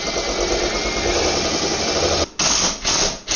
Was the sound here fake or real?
real